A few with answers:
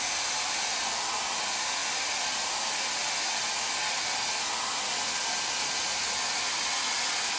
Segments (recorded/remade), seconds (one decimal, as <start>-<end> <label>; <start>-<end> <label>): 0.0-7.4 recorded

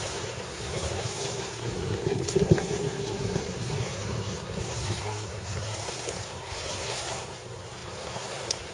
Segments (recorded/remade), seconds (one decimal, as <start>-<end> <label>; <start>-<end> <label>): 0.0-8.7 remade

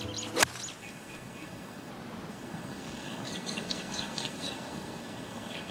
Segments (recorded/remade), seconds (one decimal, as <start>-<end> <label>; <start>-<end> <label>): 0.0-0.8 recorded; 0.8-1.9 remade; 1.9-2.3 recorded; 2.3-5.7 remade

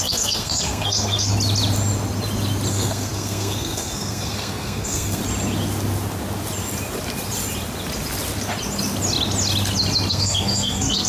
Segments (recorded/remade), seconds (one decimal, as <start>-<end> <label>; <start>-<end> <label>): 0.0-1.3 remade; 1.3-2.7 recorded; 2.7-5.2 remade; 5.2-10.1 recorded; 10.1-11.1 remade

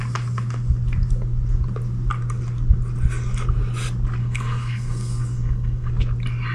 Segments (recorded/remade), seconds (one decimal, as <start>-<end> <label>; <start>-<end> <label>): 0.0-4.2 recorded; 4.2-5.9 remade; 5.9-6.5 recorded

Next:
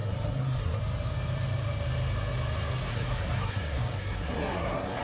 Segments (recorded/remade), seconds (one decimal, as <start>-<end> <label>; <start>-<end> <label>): 0.0-0.8 remade; 0.8-2.9 recorded; 2.9-5.0 remade

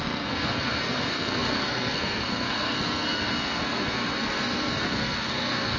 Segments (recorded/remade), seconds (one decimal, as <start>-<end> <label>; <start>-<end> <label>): 0.0-5.8 remade